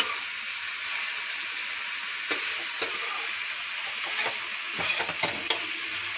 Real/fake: real